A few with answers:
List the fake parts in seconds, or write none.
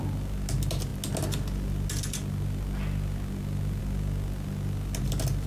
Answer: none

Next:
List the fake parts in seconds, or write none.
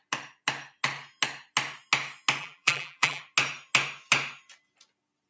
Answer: 2.4-3.2 (vocoder, BigVGAN v2)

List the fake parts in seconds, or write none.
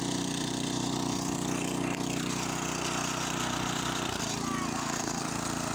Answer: 4.8-5.3 (codec, SNAC)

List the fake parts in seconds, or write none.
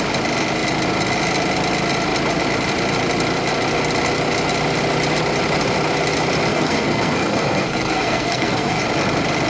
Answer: 6.5-8.8 (codec, SNAC)